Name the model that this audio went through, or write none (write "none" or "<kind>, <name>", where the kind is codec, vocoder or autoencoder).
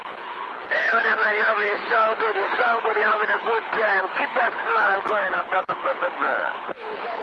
codec, HILCodec